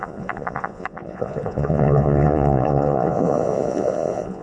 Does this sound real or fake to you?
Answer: fake